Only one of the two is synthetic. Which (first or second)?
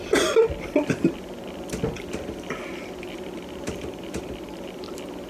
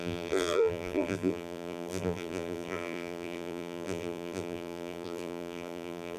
second